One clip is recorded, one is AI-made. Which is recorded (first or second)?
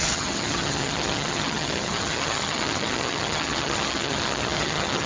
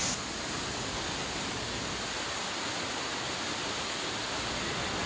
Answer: second